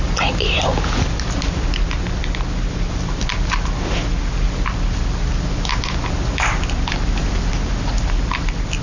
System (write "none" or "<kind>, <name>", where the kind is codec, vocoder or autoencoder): none